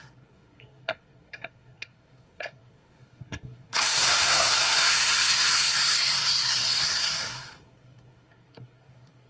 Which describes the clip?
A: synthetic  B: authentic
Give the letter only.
A